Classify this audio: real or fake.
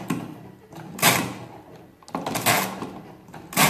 real